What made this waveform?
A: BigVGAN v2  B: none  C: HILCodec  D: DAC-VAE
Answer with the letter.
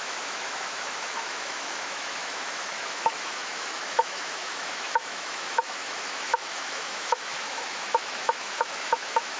D